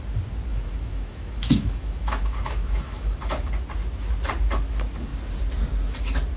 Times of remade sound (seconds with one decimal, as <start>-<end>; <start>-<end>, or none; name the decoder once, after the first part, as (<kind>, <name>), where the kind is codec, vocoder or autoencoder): 0.5-3.5 (autoencoder, DAC-VAE)